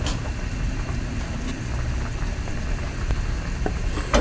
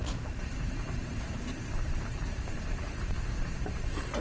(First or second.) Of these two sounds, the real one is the first